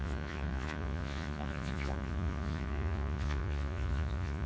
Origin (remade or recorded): remade